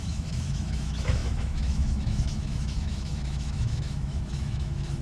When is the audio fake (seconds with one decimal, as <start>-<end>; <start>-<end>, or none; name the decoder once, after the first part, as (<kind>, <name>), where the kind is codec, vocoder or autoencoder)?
0.0-5.0 (autoencoder, DAC-VAE)